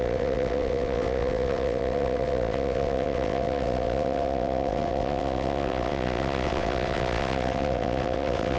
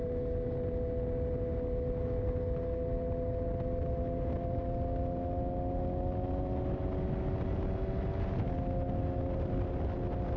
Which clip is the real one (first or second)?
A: second